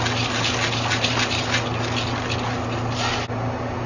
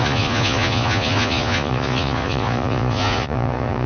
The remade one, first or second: second